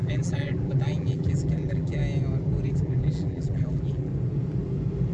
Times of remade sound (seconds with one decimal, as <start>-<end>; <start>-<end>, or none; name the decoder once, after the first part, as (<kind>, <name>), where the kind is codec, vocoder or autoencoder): 0.0-2.0 (vocoder, BigVGAN v2); 2.7-4.1